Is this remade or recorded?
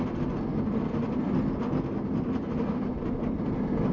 recorded